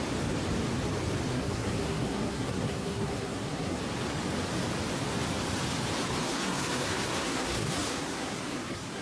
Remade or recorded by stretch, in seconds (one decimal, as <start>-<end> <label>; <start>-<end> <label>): 0.0-1.3 recorded; 1.3-3.8 remade; 3.8-6.2 recorded; 6.2-9.0 remade